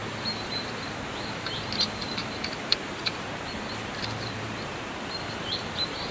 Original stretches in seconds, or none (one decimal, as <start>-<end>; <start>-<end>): none